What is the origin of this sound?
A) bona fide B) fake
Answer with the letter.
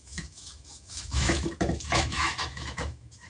B